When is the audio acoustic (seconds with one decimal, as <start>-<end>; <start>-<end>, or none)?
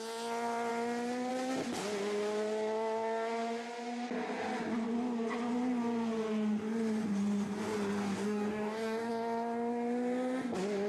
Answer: 0.0-8.0; 9.1-10.9